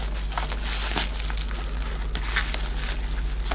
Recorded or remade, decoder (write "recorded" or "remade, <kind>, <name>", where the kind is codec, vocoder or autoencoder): recorded